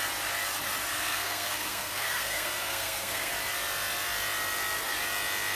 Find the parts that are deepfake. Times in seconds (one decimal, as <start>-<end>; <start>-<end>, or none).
0.9-3.3